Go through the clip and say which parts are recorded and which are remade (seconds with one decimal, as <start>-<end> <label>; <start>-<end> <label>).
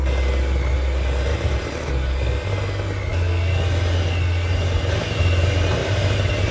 0.0-1.3 recorded; 1.3-1.9 remade; 1.9-5.8 recorded; 5.8-6.5 remade